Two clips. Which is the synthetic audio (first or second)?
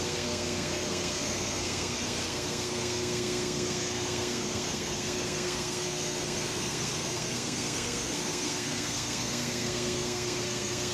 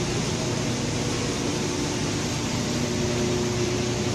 first